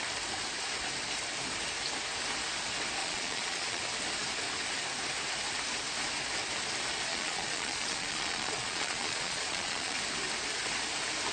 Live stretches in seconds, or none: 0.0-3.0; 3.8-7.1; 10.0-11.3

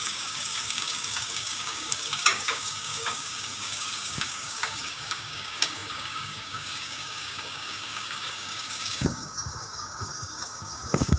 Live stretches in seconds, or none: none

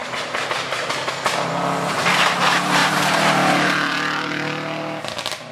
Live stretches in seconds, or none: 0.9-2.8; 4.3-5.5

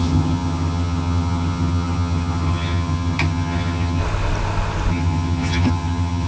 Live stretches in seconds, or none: 4.0-4.9